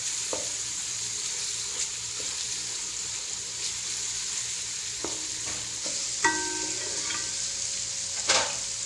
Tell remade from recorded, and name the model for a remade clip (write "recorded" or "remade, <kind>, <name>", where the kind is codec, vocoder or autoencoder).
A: recorded